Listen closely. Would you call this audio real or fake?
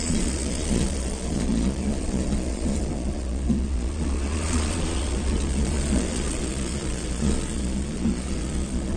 fake